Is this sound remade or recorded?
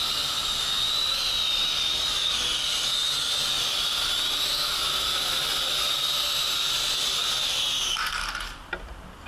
recorded